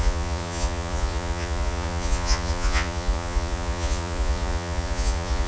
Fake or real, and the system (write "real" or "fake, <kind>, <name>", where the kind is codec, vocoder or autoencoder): fake, vocoder, Vocos